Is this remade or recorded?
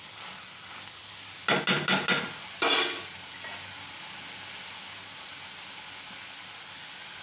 recorded